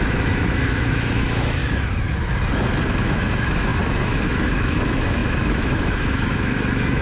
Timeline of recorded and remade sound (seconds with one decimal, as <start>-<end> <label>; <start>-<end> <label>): 0.0-1.6 remade; 1.6-3.0 recorded; 3.0-7.0 remade